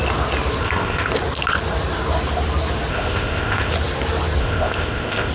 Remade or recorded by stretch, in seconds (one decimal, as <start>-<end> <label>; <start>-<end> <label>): 0.0-0.6 recorded; 0.6-1.1 remade; 1.1-2.9 recorded; 2.9-3.7 remade; 3.7-4.4 recorded; 4.4-5.3 remade